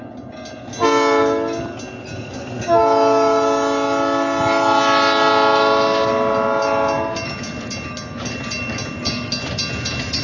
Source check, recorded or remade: recorded